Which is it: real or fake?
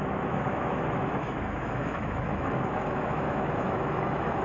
fake